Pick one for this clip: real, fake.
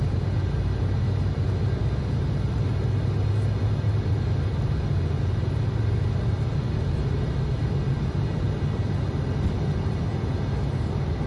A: real